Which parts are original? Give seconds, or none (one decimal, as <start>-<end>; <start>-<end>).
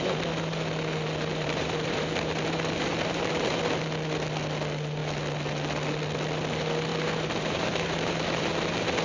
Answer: 0.0-1.3; 3.6-6.9; 8.4-9.0